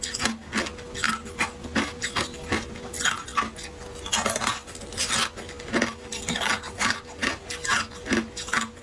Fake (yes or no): no